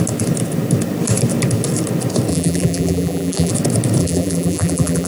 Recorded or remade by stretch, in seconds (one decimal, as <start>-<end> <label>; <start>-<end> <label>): 0.0-2.3 recorded; 2.3-3.5 remade; 3.5-4.0 recorded; 4.0-5.1 remade